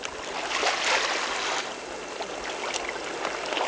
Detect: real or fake real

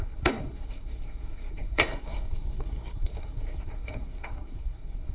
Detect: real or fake fake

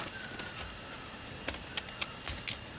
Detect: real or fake real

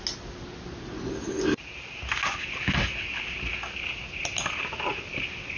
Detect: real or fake real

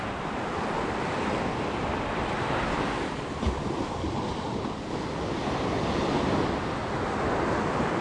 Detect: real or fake real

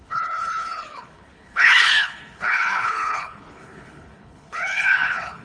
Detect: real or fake fake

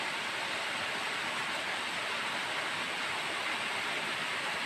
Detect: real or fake fake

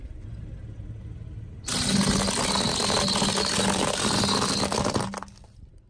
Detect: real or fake real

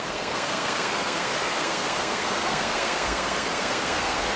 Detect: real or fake fake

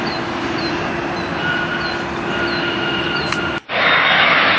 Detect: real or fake real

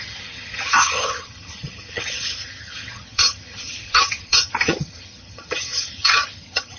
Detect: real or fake fake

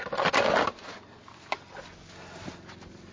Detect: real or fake real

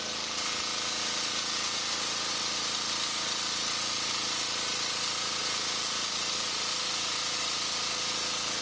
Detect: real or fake real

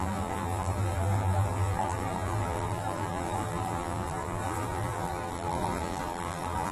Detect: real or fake fake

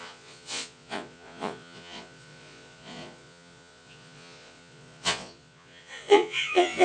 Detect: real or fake fake